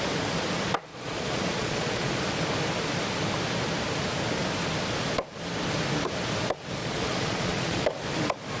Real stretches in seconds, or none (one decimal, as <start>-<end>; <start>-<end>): 0.0-0.9; 2.2-6.8; 7.8-8.6